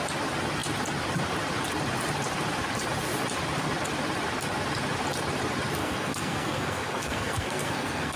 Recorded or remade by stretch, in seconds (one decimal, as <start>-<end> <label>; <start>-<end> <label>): 0.0-5.8 recorded; 5.8-8.2 remade